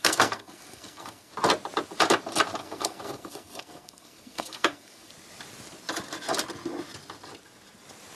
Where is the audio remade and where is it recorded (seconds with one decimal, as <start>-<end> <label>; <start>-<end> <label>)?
0.0-1.3 remade; 1.3-2.6 recorded; 2.6-5.1 remade; 5.1-8.2 recorded